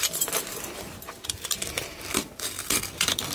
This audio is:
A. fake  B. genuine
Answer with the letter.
A